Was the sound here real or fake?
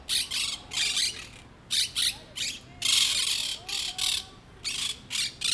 real